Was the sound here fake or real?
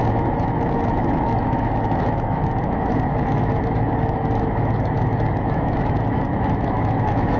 fake